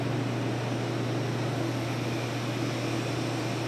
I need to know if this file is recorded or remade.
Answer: recorded